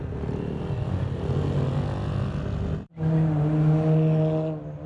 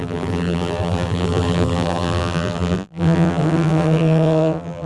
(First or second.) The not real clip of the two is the second